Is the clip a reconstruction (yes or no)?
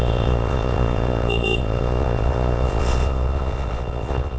yes